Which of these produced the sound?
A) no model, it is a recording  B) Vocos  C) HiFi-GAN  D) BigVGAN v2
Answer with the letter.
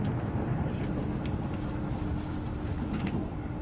A